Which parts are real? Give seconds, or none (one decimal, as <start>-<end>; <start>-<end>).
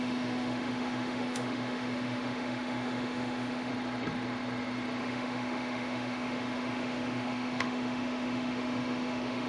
3.7-5.0